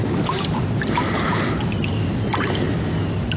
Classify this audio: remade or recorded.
recorded